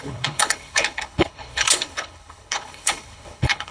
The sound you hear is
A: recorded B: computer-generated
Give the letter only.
B